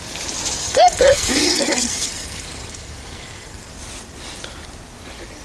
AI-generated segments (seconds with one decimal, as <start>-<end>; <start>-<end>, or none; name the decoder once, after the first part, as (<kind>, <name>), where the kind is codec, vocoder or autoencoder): 0.6-3.7 (codec, SNAC)